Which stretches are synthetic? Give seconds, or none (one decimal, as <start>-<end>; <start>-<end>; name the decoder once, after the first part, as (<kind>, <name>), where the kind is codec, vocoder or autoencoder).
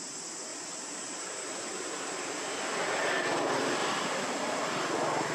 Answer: 0.5-2.6 (vocoder, BigVGAN v2); 3.8-4.6